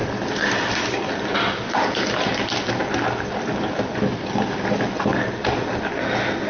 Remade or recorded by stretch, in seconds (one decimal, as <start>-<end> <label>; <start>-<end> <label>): 0.0-2.3 remade; 2.3-3.7 recorded; 3.7-5.1 remade; 5.1-6.5 recorded